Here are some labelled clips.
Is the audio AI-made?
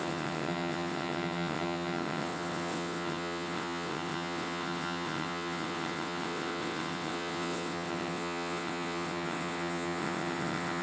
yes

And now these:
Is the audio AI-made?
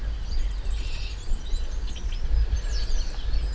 no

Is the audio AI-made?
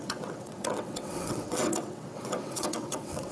yes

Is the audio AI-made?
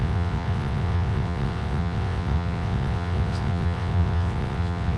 yes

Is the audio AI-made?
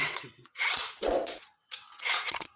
yes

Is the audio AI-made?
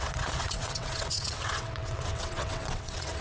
yes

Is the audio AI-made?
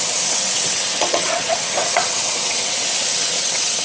yes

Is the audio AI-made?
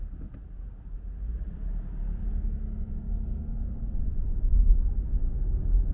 no